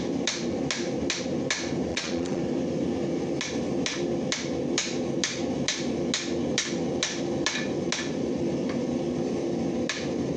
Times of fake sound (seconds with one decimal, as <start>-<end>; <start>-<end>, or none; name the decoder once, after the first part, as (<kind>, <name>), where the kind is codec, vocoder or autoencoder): 1.9-2.4 (vocoder, Vocos)

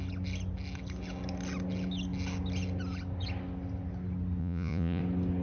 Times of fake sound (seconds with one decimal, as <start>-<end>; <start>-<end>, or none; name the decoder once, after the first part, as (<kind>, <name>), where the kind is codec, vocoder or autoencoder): 4.4-5.0 (vocoder, Vocos)

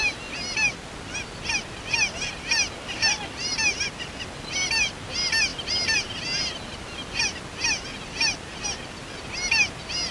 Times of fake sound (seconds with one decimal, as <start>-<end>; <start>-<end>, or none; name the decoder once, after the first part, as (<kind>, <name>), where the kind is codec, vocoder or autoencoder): none

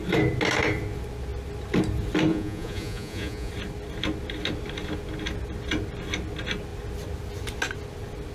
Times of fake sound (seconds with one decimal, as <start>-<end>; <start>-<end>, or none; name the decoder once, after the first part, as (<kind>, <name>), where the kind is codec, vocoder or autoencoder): 2.3-3.5 (vocoder, Vocos)

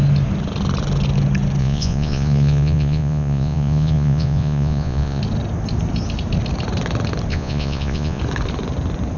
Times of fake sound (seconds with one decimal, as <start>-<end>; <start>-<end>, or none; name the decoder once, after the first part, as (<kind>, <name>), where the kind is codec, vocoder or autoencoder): 1.6-5.2 (vocoder, Vocos); 7.3-8.2

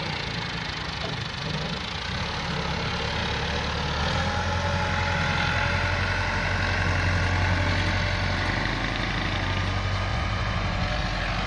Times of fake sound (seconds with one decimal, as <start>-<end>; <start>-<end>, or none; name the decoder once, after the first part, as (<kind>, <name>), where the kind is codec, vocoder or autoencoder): 10.1-11.0 (vocoder, Vocos)

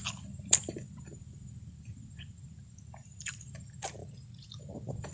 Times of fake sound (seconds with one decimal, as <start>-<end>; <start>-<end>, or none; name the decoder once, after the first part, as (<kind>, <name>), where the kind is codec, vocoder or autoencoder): 4.0-4.6 (vocoder, Vocos)